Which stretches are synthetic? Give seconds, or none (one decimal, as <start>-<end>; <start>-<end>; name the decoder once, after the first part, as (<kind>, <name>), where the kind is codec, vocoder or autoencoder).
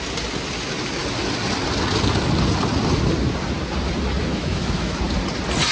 4.3-5.0 (autoencoder, DAC-VAE)